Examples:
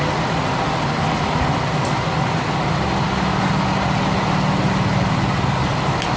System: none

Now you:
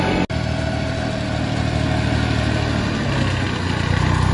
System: none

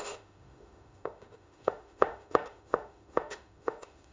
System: autoencoder, DAC-VAE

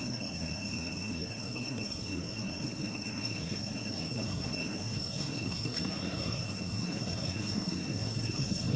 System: codec, SNAC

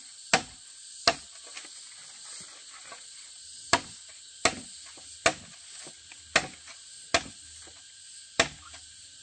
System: none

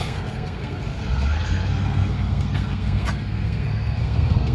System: codec, SNAC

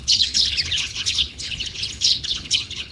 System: codec, HILCodec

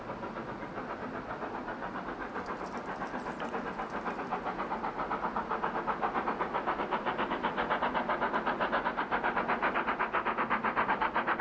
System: none